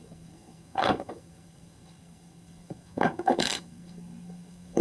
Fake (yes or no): yes